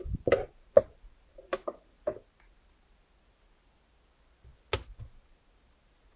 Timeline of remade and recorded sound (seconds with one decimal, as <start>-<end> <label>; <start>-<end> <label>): 0.0-6.2 recorded